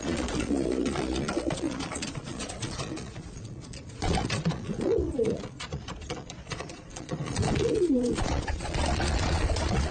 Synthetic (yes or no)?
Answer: yes